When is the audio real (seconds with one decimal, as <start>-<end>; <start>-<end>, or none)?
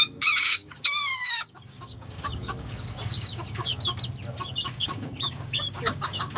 3.7-4.4